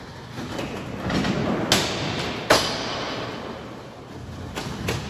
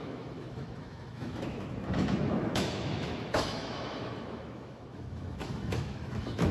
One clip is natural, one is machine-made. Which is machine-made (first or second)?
second